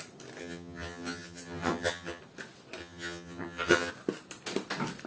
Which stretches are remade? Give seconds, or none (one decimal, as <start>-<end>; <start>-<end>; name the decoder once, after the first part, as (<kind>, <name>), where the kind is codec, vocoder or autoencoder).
0.4-2.2 (vocoder, HiFi-GAN); 2.8-3.9